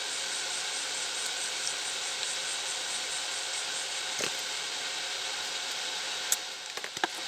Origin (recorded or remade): recorded